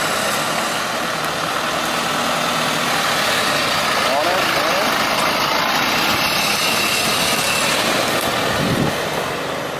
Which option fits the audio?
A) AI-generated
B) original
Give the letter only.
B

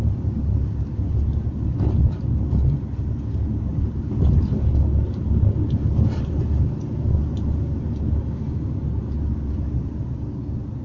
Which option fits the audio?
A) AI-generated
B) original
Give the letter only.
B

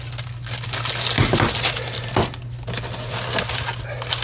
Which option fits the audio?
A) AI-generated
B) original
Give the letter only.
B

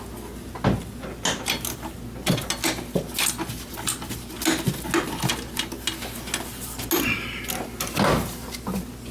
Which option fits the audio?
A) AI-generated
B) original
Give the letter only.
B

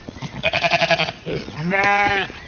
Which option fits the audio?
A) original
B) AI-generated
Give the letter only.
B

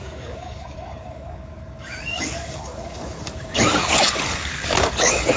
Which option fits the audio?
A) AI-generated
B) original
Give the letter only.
A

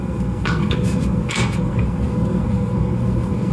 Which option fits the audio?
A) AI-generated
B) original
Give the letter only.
A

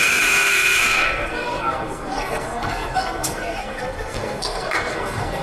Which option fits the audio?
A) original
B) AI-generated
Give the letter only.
B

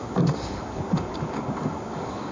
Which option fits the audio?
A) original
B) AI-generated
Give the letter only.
B